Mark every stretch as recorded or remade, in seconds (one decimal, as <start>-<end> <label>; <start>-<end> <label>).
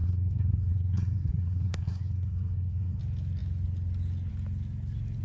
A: 0.0-3.0 remade; 3.0-5.2 recorded